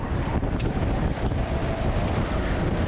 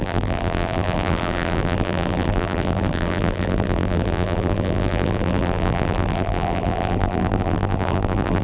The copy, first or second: second